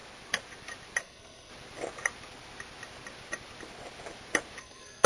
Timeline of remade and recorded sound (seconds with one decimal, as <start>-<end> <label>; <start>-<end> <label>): 0.0-1.0 recorded; 1.0-1.5 remade; 1.5-4.6 recorded; 4.6-5.1 remade